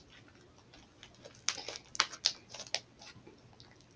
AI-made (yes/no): no